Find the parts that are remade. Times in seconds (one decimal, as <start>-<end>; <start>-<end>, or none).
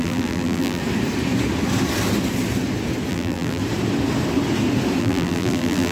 0.0-0.8; 3.1-3.6; 5.0-5.9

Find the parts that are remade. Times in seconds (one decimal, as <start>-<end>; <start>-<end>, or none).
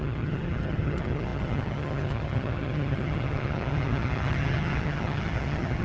0.0-5.8